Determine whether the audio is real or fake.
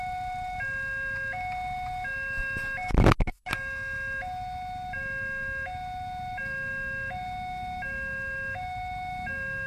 real